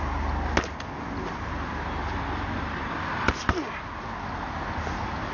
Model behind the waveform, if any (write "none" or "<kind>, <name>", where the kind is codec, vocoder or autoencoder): none